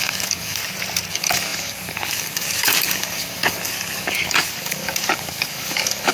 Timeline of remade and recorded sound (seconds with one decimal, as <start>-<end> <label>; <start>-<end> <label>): 0.0-0.6 remade; 0.6-1.1 recorded; 1.1-6.1 remade